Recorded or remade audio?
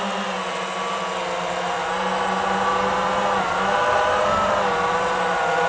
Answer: recorded